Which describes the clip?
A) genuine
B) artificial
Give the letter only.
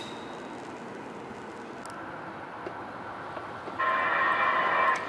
A